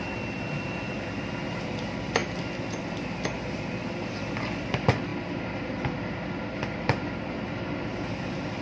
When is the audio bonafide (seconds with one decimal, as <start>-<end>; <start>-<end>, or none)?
2.2-3.5